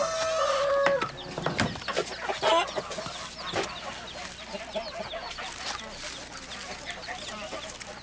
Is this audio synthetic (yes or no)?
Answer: no